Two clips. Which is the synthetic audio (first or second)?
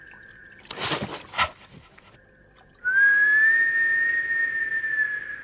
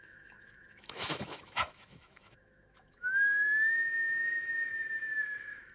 second